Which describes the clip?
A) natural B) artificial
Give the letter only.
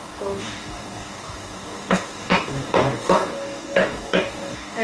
B